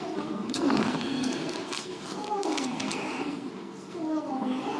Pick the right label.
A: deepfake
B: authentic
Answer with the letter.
A